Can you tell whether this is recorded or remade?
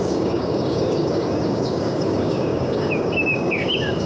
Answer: remade